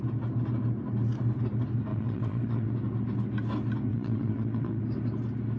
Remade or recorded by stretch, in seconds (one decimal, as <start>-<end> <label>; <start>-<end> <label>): 0.0-1.9 recorded; 1.9-2.7 remade; 2.7-3.9 recorded; 3.9-4.8 remade; 4.8-5.6 recorded